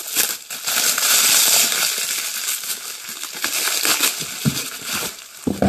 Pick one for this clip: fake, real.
real